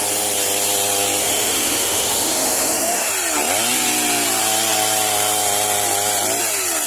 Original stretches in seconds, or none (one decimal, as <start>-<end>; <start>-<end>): 0.0-1.2; 3.1-6.9